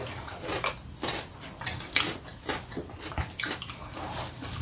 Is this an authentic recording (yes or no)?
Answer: yes